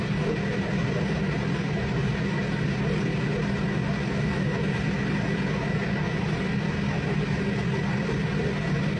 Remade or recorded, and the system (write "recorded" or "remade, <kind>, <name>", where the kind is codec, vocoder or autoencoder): recorded